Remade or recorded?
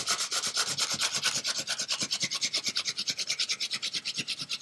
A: recorded